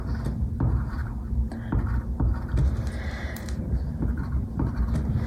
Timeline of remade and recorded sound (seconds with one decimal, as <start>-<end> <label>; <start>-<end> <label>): 0.0-5.3 remade